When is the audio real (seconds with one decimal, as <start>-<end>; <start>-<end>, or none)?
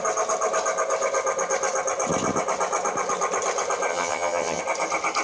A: 0.0-3.9; 4.6-5.2